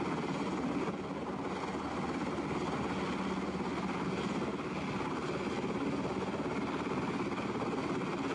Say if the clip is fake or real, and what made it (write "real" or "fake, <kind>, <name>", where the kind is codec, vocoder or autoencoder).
real